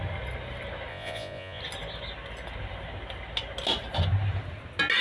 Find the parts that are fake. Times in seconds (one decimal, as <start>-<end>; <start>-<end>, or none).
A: 0.9-1.6